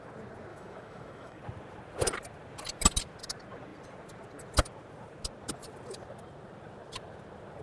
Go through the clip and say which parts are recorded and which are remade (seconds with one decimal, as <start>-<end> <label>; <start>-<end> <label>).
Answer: 0.0-0.5 recorded; 0.5-1.4 remade; 1.4-7.6 recorded